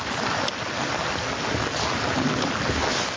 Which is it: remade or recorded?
recorded